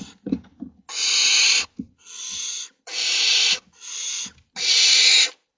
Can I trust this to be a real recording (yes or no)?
yes